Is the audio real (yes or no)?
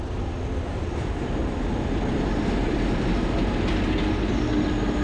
yes